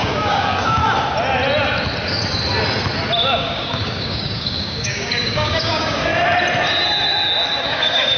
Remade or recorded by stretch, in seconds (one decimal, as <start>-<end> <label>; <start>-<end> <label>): 0.0-0.8 remade; 0.8-3.4 recorded; 3.4-6.1 remade; 6.1-7.6 recorded; 7.6-8.2 remade